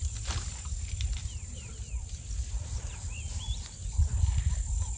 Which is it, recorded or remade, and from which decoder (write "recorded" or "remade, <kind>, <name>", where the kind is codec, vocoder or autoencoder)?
recorded